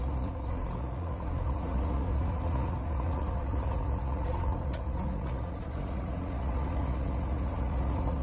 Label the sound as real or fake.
fake